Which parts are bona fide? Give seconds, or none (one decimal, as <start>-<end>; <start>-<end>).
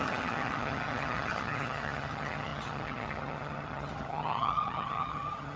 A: none